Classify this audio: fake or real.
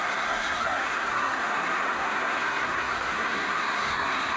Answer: fake